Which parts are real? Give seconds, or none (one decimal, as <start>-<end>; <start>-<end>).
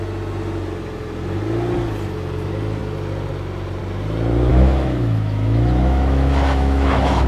0.0-4.5